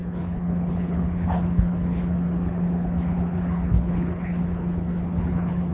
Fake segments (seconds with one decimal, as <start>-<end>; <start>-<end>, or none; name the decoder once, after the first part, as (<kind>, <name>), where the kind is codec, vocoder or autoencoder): 0.0-5.7 (codec, HILCodec)